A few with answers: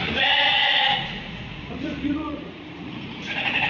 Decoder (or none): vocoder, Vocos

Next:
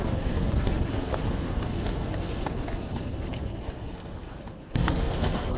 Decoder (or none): codec, SNAC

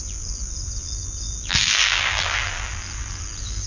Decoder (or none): vocoder, BigVGAN v2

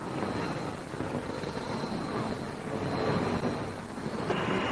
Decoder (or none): none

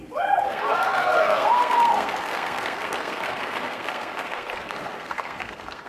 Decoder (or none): codec, SNAC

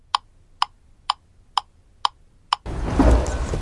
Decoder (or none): none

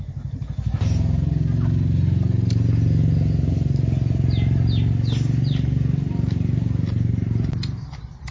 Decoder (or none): none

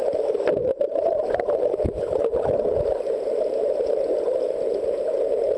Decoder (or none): none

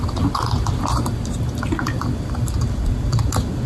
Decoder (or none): none